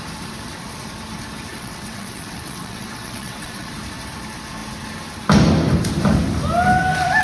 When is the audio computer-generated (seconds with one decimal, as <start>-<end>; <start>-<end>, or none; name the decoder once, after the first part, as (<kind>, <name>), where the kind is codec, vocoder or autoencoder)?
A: 1.5-3.7 (vocoder, WaveNeXt)